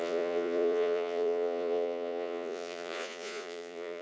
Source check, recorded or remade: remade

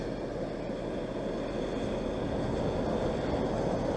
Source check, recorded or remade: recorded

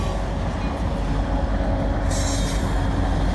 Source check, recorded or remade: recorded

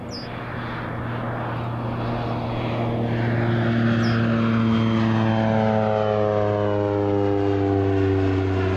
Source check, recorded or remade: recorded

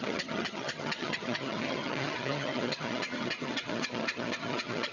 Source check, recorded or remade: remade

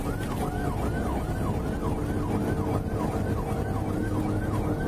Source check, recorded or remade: recorded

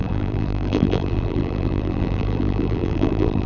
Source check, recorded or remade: remade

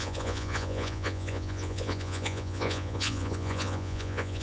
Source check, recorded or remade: remade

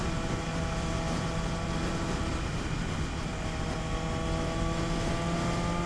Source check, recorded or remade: recorded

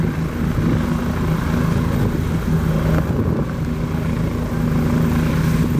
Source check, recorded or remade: recorded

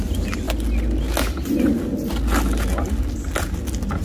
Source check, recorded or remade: recorded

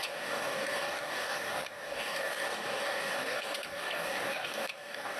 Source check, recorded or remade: remade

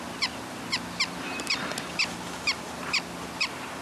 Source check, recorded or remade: recorded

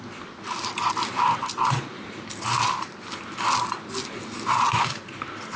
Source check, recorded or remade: recorded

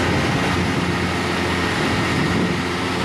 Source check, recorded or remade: recorded